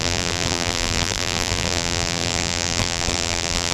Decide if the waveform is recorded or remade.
remade